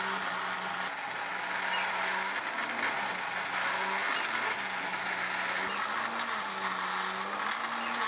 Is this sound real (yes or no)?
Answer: yes